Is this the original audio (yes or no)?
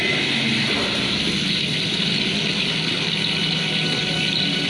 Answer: yes